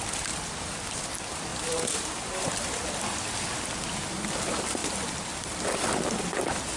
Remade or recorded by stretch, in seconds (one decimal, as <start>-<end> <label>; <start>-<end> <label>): 0.0-1.5 recorded; 1.5-2.8 remade; 2.8-6.8 recorded